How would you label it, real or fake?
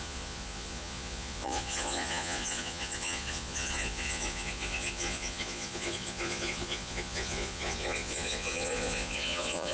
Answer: fake